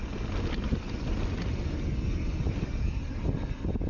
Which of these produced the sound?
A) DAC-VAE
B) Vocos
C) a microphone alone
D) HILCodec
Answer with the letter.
C